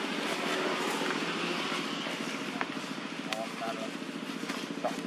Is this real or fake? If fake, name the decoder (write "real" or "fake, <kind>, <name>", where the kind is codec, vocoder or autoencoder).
real